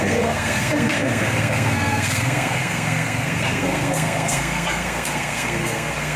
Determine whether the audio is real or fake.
fake